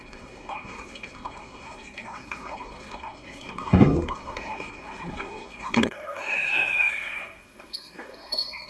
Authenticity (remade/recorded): remade